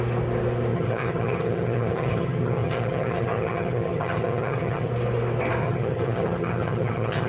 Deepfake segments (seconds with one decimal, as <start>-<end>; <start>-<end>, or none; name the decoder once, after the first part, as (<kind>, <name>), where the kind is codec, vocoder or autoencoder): 0.7-4.9 (vocoder, HiFi-GAN); 5.6-7.3